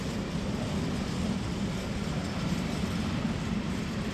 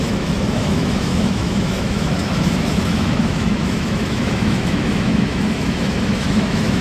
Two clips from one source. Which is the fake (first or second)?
second